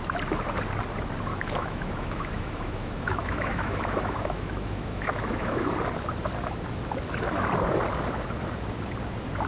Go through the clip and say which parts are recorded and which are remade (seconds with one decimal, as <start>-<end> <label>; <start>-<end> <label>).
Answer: 0.0-1.3 recorded; 1.3-5.7 remade; 5.7-9.5 recorded